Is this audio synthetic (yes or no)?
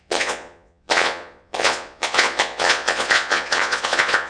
yes